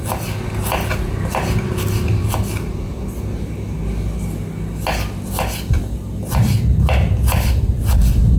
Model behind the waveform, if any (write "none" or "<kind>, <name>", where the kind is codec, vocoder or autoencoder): none